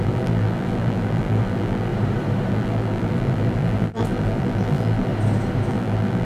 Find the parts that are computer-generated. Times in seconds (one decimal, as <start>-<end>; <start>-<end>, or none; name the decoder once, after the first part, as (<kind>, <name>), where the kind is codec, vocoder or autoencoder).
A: 0.0-1.9 (vocoder, BigVGAN v2); 2.5-5.1; 5.7-6.2